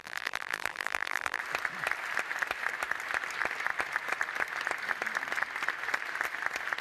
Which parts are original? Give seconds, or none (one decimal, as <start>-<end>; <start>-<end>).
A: 1.4-6.8